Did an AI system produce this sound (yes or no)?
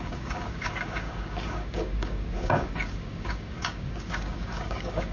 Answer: yes